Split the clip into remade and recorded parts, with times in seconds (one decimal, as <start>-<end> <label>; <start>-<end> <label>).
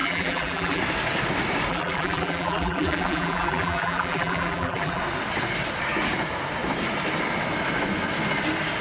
0.0-0.8 remade; 0.8-1.7 recorded; 1.7-5.0 remade; 5.0-8.8 recorded